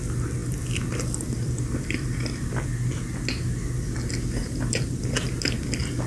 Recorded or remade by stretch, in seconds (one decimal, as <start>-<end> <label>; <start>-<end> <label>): 0.0-6.1 recorded